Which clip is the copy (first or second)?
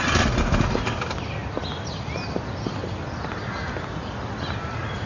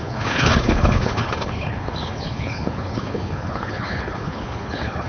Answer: second